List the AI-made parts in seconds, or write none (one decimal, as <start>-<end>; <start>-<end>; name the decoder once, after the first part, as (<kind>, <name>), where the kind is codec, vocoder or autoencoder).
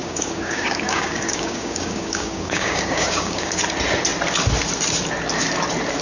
0.0-3.6 (codec, DAC)